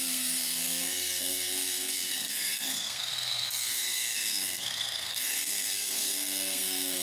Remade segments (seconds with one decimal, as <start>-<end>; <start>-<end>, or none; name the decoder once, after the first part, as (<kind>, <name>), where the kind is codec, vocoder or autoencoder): 0.0-7.0 (codec, SNAC)